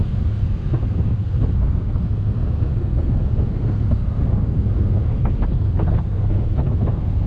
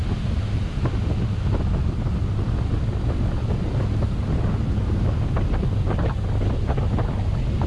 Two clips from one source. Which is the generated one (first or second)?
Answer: first